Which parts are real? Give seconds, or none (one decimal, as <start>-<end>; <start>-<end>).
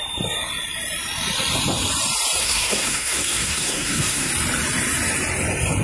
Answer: 0.0-2.4; 4.3-5.8